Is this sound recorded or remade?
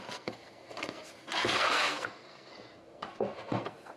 remade